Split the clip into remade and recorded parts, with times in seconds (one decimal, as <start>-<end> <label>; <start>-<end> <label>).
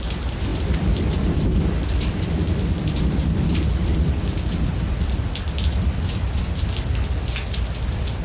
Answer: 0.0-0.5 recorded; 0.5-4.6 remade; 4.6-8.2 recorded